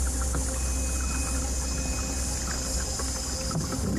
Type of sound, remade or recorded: recorded